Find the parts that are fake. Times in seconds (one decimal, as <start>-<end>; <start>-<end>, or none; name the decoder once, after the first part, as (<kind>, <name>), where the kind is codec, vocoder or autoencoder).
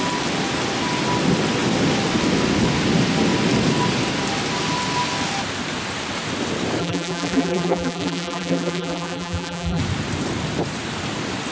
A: 6.8-9.8 (vocoder, BigVGAN v2)